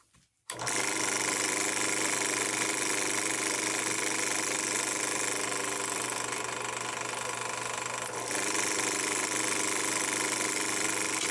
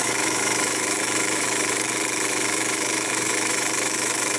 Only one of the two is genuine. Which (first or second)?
first